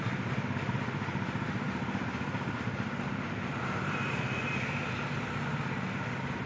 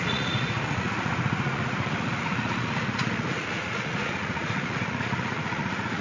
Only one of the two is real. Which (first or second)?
first